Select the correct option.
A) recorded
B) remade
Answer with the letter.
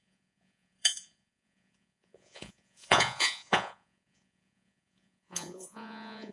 B